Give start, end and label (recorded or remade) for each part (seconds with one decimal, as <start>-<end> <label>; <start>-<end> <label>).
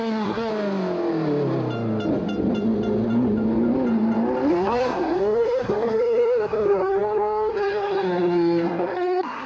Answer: 0.0-0.5 remade; 0.5-4.5 recorded; 4.5-9.5 remade